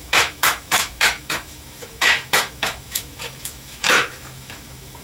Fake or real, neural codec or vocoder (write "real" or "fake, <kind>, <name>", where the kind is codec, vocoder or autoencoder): fake, autoencoder, DAC-VAE